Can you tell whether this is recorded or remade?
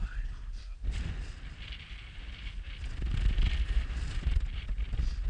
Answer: recorded